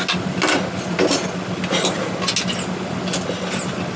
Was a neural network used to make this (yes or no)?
no